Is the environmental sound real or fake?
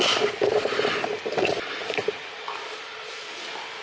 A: fake